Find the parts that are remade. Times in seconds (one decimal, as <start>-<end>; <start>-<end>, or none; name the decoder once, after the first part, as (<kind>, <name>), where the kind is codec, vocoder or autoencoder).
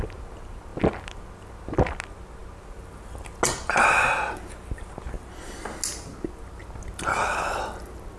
7.1-7.6 (codec, HILCodec)